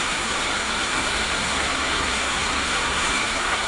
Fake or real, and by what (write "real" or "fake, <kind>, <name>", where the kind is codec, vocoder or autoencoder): fake, codec, SNAC